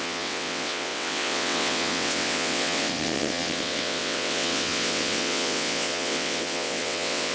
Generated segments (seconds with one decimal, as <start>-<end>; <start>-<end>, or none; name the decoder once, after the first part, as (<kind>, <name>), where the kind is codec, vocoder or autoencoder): 0.0-7.3 (vocoder, WaveNeXt)